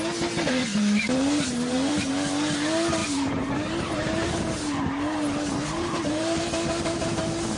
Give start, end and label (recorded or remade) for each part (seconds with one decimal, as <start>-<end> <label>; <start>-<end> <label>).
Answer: 0.0-0.7 recorded; 0.7-2.1 remade; 2.1-3.0 recorded; 3.0-6.4 remade; 6.4-7.6 recorded

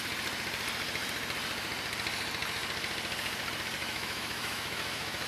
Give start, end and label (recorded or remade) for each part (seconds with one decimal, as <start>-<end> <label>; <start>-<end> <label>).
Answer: 0.0-3.8 recorded; 3.8-5.3 remade

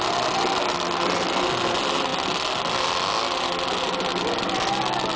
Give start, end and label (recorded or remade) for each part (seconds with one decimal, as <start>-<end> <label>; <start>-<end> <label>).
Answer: 0.0-5.2 recorded